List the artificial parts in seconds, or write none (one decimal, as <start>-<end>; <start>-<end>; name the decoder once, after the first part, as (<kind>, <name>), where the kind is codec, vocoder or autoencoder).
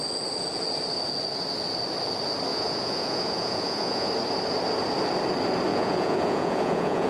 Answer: 2.5-4.1 (vocoder, Vocos); 5.7-7.1